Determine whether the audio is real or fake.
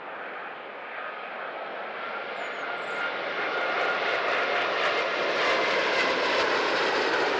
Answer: real